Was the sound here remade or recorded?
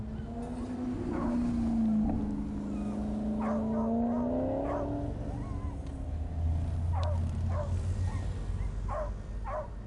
recorded